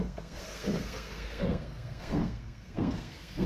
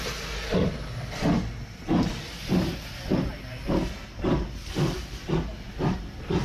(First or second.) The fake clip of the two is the first